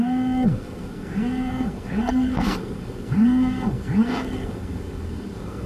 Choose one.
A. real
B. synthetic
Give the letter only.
B